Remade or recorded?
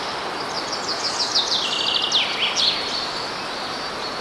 recorded